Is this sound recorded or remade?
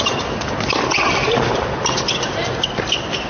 recorded